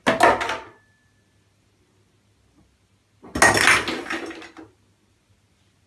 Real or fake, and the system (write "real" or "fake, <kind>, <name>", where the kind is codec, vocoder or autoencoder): real